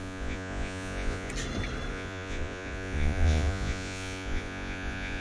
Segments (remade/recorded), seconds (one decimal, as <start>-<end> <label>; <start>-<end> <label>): 0.0-1.3 remade; 1.3-1.9 recorded; 1.9-5.2 remade